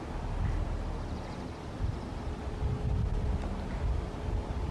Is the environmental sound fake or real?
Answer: real